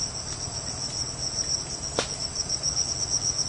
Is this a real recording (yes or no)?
yes